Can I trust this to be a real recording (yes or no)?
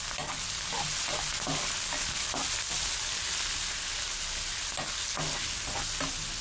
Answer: yes